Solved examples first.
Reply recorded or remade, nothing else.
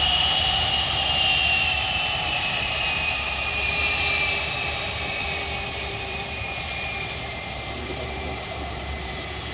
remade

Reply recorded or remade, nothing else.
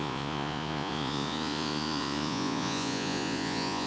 remade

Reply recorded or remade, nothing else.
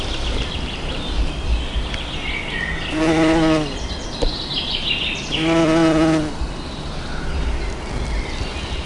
recorded